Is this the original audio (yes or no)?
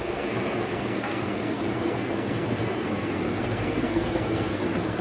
no